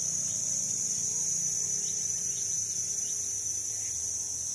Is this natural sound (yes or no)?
yes